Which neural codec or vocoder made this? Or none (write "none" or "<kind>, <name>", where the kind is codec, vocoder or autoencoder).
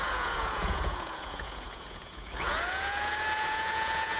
vocoder, Vocos